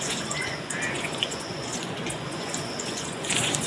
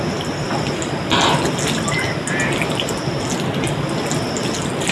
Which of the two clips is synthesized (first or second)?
first